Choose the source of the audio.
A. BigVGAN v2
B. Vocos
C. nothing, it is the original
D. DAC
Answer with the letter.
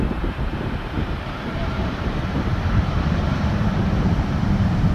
A